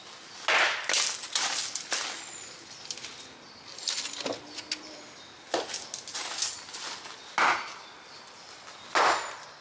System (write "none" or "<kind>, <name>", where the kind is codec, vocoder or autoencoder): none